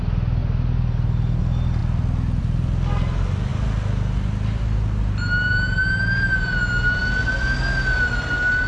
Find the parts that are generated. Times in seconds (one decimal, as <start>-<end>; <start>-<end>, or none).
none